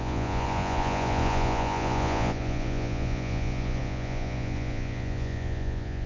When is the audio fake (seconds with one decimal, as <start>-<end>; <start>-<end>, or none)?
0.0-6.1